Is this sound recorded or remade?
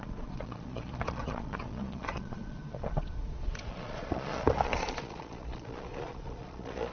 remade